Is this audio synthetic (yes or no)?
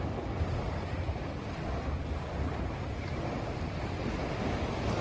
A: no